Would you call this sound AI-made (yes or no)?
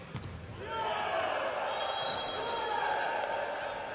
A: no